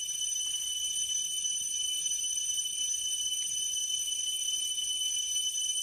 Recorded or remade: recorded